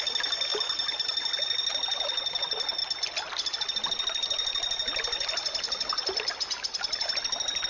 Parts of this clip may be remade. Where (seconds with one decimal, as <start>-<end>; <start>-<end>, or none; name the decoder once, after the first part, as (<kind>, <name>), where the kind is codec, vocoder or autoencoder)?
none